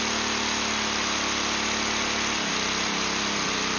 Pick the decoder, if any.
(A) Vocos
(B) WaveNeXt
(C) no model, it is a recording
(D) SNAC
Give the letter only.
C